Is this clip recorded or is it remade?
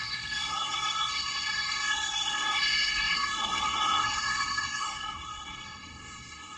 remade